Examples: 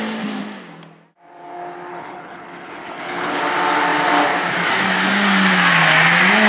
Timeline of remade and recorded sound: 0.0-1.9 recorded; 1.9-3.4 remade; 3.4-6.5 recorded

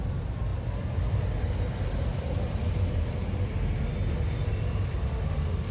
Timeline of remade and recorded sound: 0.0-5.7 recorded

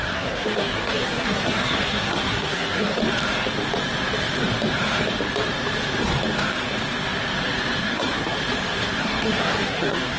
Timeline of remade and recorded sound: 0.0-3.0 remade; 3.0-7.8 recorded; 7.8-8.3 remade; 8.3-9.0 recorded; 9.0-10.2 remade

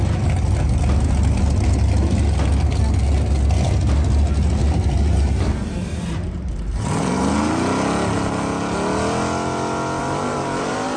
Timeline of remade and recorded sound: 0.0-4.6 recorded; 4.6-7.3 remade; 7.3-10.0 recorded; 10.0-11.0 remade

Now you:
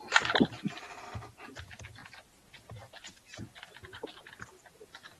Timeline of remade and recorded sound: 0.0-5.2 recorded

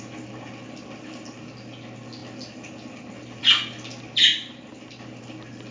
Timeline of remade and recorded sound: 0.0-5.7 recorded

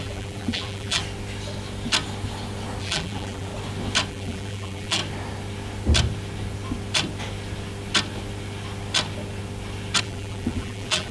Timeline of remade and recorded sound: 0.0-1.0 remade; 1.0-2.8 recorded; 2.8-3.5 remade; 3.5-4.1 recorded; 4.1-5.0 remade; 5.0-10.0 recorded; 10.0-11.1 remade

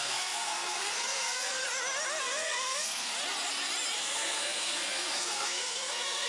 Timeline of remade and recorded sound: 0.0-1.6 remade; 1.6-2.2 recorded; 2.2-3.1 remade; 3.1-4.0 recorded; 4.0-6.3 remade